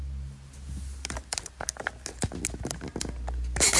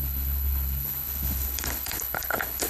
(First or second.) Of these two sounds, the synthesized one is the second